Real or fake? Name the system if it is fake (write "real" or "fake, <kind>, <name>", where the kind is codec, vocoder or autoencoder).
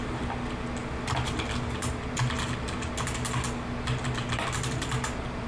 real